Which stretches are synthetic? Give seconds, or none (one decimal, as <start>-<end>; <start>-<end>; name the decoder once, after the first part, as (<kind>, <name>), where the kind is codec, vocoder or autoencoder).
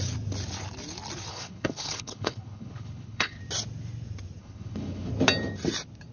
1.3-3.4 (codec, HILCodec); 4.4-5.1